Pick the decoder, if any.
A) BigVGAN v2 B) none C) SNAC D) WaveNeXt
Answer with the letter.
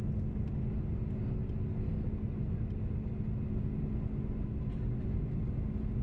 B